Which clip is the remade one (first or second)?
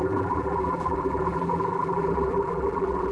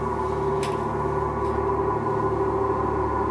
first